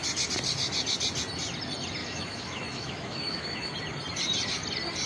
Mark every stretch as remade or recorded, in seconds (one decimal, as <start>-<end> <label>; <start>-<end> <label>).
0.0-2.0 recorded; 2.0-3.7 remade; 3.7-5.1 recorded